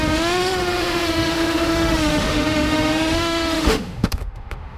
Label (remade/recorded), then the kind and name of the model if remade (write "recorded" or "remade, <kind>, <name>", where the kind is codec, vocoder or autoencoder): remade, autoencoder, DAC-VAE